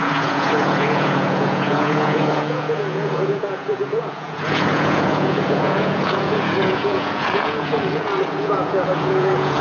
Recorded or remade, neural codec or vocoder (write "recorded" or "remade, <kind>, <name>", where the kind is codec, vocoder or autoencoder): remade, vocoder, Vocos